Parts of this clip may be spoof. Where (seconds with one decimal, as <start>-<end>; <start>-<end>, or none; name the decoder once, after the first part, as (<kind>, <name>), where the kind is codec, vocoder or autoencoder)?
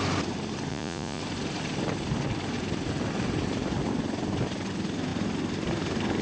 0.7-1.2 (vocoder, Vocos)